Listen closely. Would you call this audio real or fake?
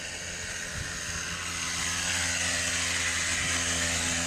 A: real